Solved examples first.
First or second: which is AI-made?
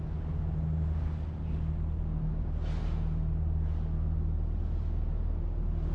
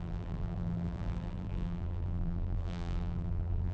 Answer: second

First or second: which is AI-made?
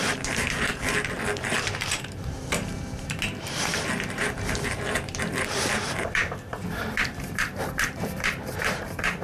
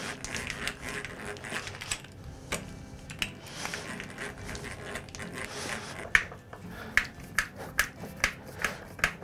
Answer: first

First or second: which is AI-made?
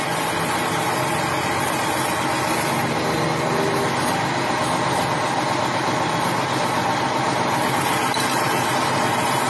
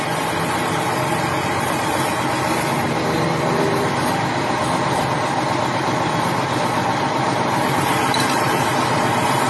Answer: second